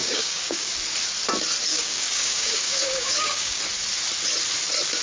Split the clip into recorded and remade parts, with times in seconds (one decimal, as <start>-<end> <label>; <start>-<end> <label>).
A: 0.0-0.7 remade; 0.7-1.7 recorded; 1.7-3.6 remade; 3.6-5.0 recorded